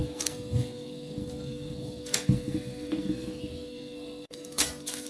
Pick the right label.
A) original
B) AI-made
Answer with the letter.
B